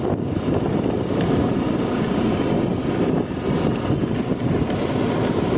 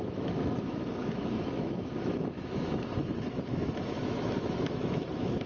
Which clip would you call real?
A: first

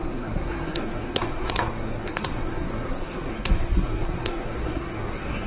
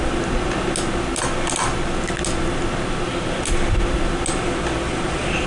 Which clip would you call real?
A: second